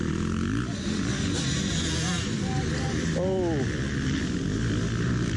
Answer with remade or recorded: recorded